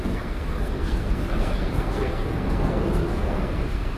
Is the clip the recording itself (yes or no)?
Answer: no